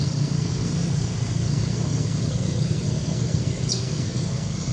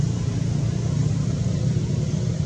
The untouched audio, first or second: second